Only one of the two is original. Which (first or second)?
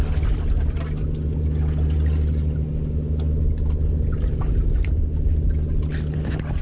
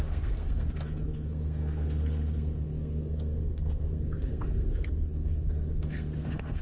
first